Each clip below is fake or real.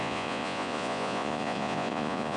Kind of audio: fake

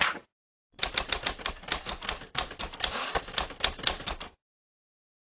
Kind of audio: real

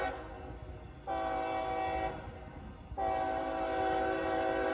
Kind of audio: real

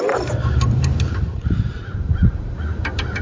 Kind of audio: fake